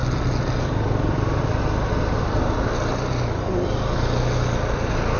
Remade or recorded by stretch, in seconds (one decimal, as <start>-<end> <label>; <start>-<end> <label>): 0.0-5.2 recorded